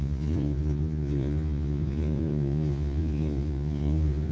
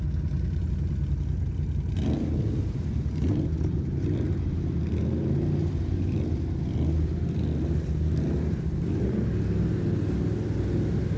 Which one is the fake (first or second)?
first